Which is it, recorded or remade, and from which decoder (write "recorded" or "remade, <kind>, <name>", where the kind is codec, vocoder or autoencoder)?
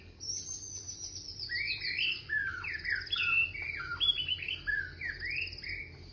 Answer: recorded